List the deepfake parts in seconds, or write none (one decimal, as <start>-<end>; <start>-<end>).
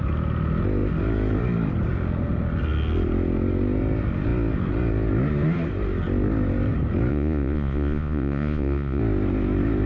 7.1-9.0